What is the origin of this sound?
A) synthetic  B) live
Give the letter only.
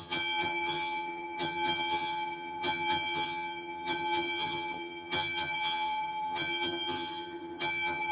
A